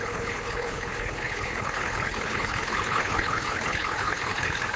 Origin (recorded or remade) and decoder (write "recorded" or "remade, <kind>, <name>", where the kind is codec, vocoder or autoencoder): remade, codec, HILCodec